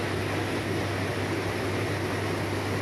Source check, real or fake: real